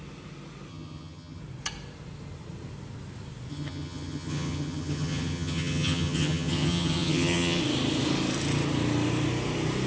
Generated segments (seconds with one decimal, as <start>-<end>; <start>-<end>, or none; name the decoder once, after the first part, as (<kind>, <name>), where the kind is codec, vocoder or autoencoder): 0.7-1.4 (vocoder, HiFi-GAN); 3.5-7.6